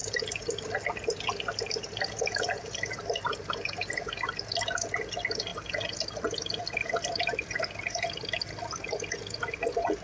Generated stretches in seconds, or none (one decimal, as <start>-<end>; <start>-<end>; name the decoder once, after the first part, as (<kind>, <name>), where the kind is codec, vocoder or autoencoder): none